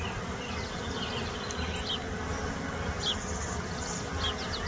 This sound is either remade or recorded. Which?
recorded